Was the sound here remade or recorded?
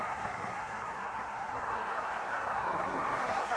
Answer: remade